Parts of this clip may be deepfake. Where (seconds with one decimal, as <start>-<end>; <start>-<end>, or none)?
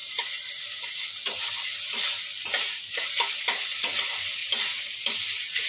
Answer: 0.0-0.6; 4.4-5.7